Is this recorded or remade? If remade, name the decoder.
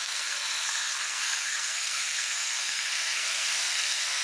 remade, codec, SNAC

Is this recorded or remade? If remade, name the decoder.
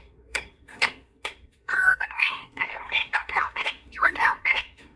remade, codec, SNAC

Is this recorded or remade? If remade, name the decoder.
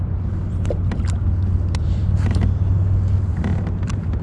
recorded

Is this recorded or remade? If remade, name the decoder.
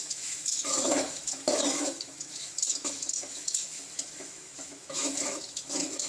remade, autoencoder, DAC-VAE